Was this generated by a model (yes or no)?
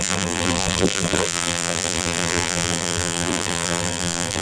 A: yes